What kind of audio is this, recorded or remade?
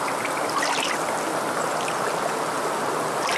recorded